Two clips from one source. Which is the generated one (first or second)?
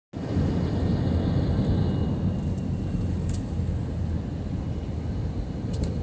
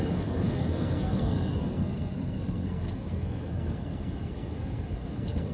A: second